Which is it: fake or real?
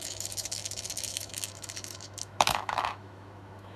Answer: fake